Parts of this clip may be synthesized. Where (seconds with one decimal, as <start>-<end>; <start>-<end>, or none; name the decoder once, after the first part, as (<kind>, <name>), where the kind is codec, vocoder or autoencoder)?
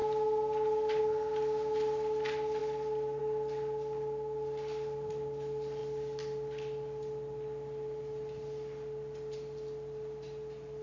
none